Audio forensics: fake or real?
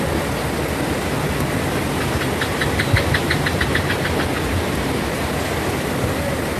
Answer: real